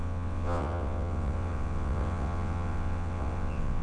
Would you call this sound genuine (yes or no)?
no